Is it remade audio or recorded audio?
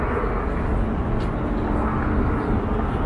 recorded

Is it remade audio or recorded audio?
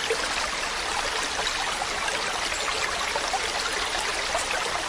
recorded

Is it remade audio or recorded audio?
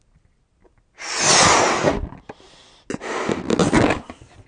recorded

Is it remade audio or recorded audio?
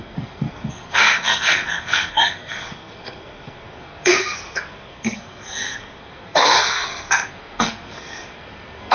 remade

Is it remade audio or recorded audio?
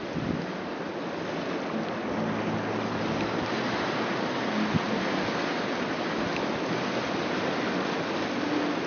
recorded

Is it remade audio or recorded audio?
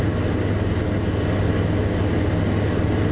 recorded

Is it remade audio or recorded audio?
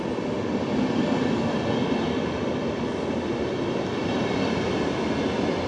recorded